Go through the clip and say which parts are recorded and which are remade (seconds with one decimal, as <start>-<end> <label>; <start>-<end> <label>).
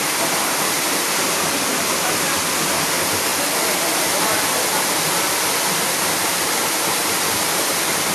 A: 0.0-3.3 recorded; 3.3-8.1 remade